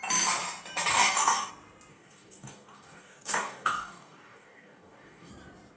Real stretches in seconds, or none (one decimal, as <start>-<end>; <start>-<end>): 0.0-0.9; 1.5-1.9; 5.3-5.8